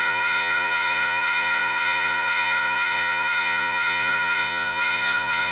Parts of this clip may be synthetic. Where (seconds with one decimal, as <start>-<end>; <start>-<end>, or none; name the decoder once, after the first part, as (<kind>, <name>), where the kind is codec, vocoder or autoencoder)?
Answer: 0.0-5.5 (vocoder, Vocos)